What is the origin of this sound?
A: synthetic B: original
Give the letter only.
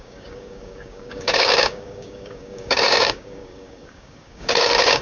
A